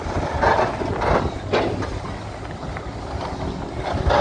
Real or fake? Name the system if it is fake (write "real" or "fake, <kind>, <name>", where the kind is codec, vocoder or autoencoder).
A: real